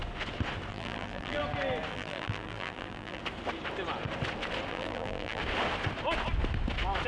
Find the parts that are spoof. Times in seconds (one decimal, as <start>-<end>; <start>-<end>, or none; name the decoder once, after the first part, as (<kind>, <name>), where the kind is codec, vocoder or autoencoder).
0.7-1.4 (vocoder, BigVGAN v2); 1.9-3.2; 4.7-5.4